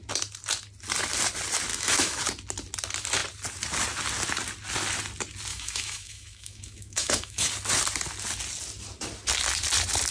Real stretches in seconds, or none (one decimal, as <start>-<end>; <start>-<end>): 0.0-1.7; 2.2-5.5; 7.5-10.1